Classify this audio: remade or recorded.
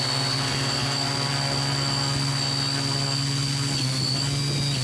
recorded